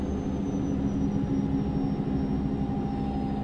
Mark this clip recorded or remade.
recorded